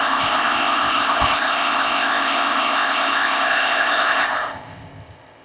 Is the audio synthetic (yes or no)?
yes